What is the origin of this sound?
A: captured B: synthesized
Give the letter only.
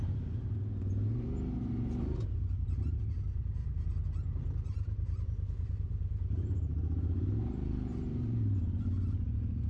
B